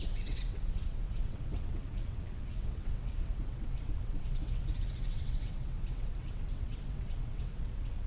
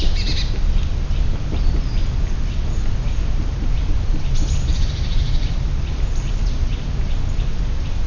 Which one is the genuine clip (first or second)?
second